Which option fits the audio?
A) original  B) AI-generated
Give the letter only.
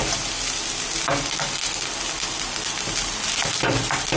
A